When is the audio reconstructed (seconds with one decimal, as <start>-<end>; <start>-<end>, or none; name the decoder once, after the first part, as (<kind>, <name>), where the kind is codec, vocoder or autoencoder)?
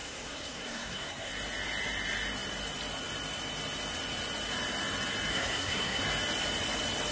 0.0-1.3 (codec, SNAC); 5.3-6.0